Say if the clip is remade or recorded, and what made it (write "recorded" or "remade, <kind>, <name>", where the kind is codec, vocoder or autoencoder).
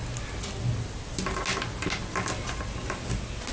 recorded